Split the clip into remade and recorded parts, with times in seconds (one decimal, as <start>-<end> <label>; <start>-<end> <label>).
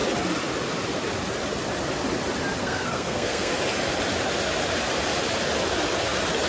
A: 0.0-2.6 recorded; 2.6-3.5 remade; 3.5-6.5 recorded